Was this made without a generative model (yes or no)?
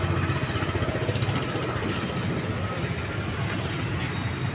yes